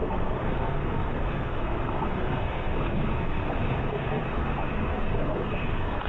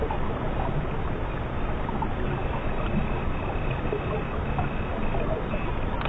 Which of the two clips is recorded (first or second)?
second